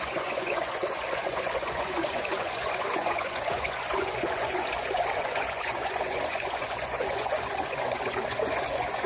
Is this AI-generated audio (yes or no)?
yes